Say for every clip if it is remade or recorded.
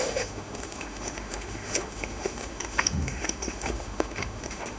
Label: remade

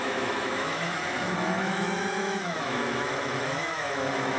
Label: remade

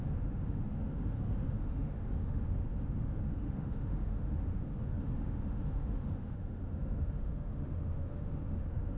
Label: remade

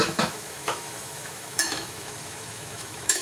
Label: remade